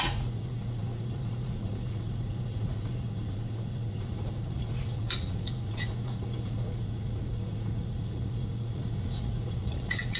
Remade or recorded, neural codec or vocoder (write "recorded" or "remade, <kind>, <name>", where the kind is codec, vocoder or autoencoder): remade, vocoder, Vocos